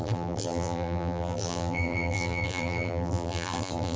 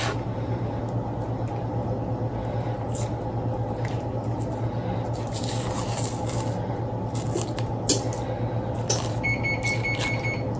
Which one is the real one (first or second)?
second